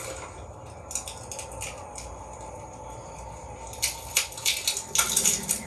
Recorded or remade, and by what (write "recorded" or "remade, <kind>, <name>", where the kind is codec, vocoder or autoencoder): recorded